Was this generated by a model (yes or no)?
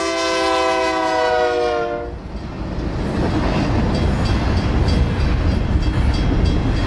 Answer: no